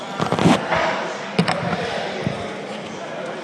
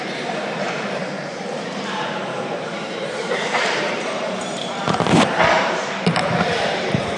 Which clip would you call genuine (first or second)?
first